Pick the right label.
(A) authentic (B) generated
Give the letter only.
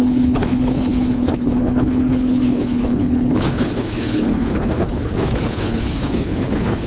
B